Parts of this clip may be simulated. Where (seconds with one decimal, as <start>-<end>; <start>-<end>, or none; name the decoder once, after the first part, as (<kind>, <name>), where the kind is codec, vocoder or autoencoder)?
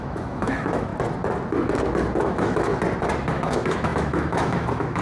0.0-0.9 (autoencoder, DAC-VAE); 2.2-2.7; 3.3-5.0